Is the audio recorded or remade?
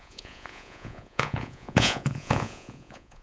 remade